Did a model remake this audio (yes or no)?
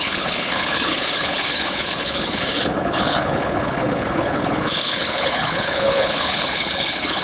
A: yes